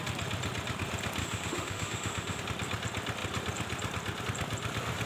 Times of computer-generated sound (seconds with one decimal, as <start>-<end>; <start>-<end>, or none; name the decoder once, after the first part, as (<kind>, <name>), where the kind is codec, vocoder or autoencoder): 1.2-2.4 (autoencoder, DAC-VAE)